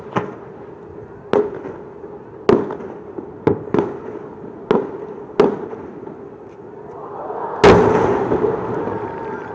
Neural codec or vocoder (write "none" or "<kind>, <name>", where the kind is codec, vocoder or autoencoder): none